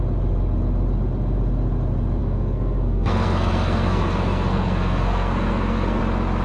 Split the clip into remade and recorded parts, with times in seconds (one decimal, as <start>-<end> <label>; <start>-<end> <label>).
0.0-2.2 recorded; 2.2-6.0 remade; 6.0-6.4 recorded